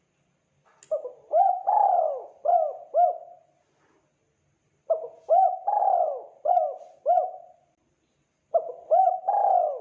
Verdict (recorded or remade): recorded